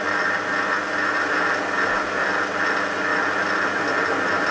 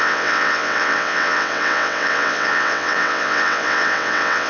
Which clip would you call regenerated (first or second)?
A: second